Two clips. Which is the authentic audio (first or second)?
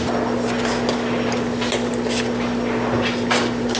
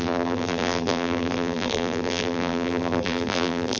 first